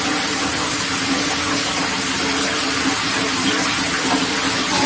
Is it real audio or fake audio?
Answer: real